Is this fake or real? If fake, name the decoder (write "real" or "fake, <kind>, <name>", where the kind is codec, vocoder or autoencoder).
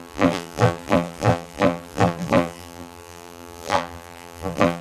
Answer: fake, vocoder, BigVGAN v2